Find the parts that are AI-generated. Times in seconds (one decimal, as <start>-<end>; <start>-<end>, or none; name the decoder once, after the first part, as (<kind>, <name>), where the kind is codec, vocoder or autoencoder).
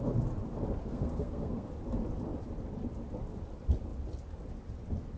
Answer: 0.8-1.7 (codec, SNAC)